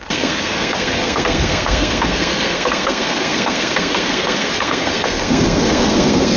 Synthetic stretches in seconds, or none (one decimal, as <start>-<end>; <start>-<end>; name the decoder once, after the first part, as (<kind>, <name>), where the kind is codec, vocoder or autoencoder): 0.0-6.4 (codec, SNAC)

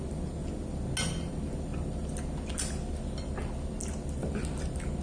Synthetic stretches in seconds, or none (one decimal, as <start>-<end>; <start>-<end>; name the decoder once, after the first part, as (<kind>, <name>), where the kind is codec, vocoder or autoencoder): none

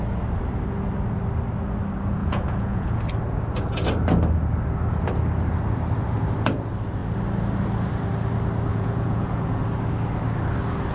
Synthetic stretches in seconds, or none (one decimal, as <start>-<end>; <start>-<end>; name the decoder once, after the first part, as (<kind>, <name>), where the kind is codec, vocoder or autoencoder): 2.2-3.0 (vocoder, Vocos); 8.7-9.6

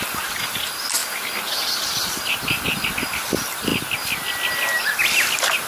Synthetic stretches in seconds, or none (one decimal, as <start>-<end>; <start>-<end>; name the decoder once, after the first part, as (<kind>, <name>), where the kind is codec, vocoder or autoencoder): none

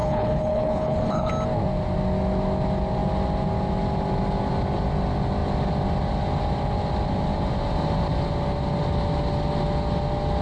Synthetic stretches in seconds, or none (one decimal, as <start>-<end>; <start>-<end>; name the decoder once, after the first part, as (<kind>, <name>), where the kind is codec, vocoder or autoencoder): 0.0-1.3 (codec, HILCodec)

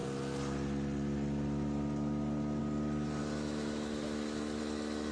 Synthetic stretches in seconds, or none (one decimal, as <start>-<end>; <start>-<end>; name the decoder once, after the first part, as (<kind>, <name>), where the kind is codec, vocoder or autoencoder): 3.2-4.6 (autoencoder, DAC-VAE)

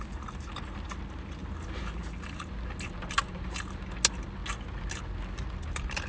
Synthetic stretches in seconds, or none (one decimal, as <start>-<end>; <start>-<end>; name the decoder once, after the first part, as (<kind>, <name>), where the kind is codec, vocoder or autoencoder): none